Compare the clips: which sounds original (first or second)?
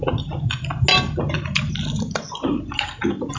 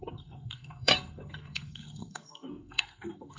first